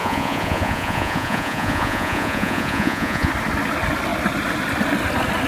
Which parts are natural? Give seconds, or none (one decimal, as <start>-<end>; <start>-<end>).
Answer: 3.3-5.5